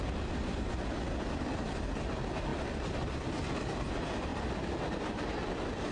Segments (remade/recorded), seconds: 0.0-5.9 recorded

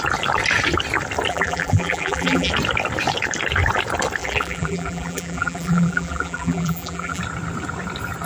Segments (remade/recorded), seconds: 0.0-1.3 recorded; 1.3-2.5 remade; 2.5-4.2 recorded; 4.2-7.2 remade; 7.2-8.3 recorded

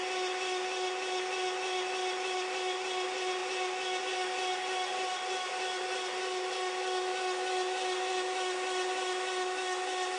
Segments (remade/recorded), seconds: 0.0-10.2 recorded

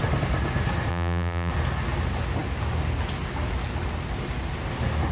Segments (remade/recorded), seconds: 0.0-0.9 recorded; 0.9-1.5 remade; 1.5-5.1 recorded

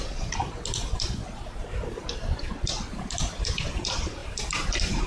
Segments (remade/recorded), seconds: 0.0-4.2 recorded; 4.2-5.1 remade

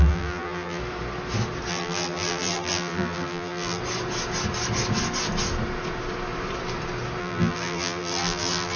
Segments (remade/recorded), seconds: 0.0-0.8 remade; 0.8-1.7 recorded; 1.7-3.8 remade; 3.8-7.2 recorded; 7.2-8.8 remade

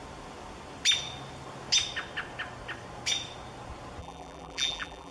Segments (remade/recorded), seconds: 0.0-4.0 recorded; 4.0-5.1 remade

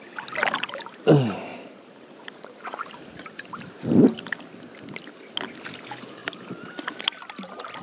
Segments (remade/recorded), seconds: 0.0-1.5 recorded; 1.5-3.8 remade; 3.8-7.8 recorded